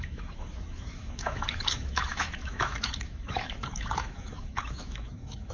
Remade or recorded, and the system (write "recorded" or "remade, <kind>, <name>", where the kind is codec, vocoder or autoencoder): remade, autoencoder, DAC-VAE